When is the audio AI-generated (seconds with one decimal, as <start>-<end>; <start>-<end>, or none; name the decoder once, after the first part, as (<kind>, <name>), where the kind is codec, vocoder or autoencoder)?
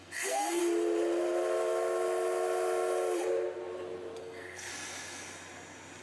0.0-0.6 (codec, SNAC); 4.2-4.7